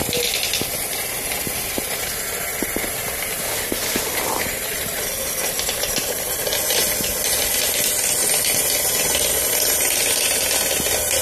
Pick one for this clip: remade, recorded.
recorded